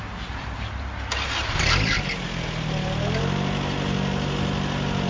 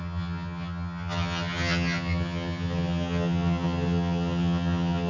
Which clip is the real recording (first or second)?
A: first